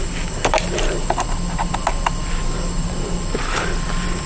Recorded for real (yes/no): yes